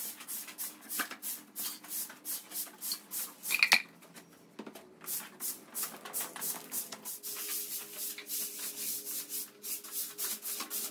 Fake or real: real